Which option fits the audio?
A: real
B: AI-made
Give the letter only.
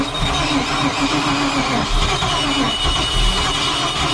A